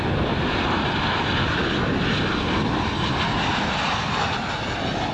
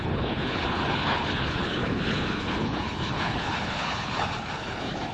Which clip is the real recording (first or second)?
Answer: first